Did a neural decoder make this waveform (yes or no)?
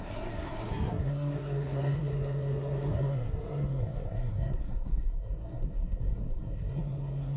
yes